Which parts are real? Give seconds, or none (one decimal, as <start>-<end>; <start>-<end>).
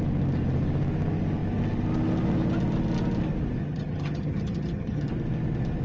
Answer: 0.0-3.6; 5.1-5.8